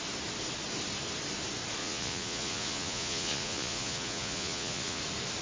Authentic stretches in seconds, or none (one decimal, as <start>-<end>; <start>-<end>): 0.0-1.8; 5.0-5.4